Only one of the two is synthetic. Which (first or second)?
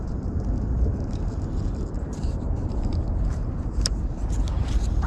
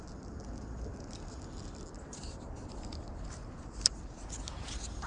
first